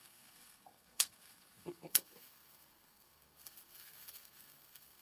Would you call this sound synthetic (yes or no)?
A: yes